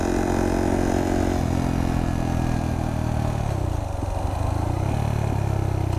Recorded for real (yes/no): yes